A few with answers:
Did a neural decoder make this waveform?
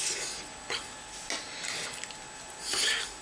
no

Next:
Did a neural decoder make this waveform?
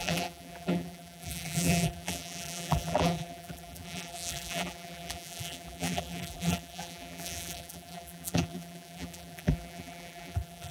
yes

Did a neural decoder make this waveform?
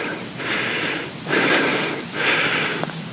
no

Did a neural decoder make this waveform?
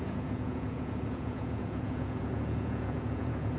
yes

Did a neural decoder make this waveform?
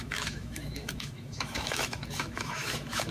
yes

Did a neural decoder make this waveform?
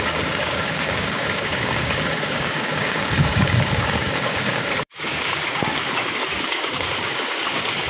yes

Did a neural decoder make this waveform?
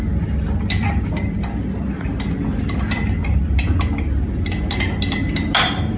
no